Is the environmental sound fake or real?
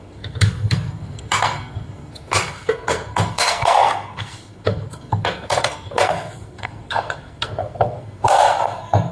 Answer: fake